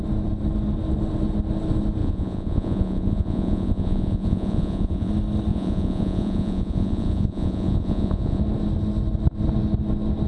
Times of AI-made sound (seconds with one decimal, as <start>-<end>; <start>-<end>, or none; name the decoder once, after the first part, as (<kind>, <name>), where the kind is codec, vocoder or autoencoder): 2.0-5.1 (vocoder, Vocos); 5.5-8.4